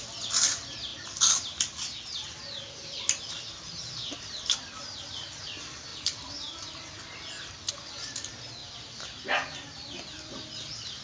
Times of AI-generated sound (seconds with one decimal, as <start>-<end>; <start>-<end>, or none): none